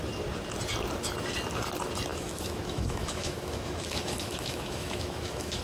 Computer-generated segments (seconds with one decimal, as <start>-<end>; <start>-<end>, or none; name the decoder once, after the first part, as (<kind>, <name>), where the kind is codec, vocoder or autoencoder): 2.1-5.6 (autoencoder, DAC-VAE)